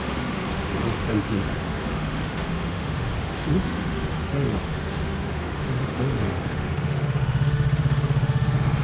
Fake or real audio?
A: fake